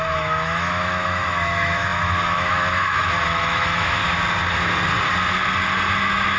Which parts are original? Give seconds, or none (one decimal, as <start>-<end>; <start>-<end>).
4.0-6.0